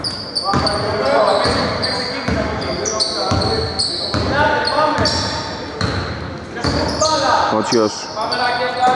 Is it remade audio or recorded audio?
recorded